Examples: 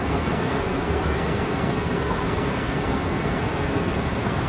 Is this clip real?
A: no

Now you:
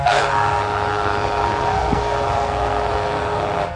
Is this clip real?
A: no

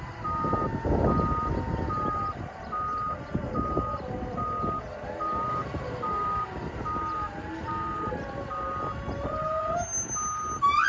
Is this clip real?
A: yes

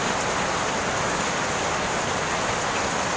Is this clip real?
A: yes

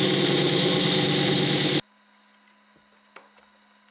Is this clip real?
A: yes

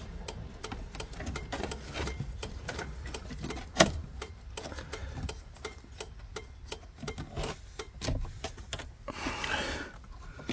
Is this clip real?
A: yes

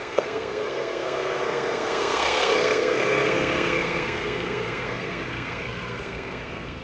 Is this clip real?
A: no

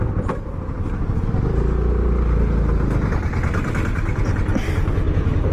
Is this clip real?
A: yes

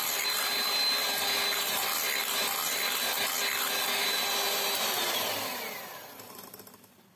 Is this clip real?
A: yes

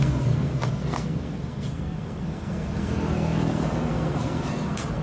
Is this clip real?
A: no